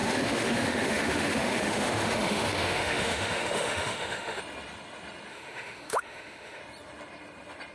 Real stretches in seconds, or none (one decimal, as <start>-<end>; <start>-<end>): 4.4-5.3; 6.6-7.7